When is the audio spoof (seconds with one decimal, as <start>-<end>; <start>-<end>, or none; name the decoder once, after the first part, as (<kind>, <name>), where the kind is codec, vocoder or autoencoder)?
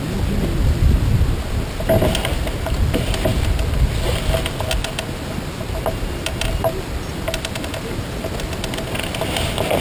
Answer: none